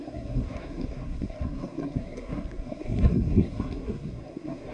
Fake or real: fake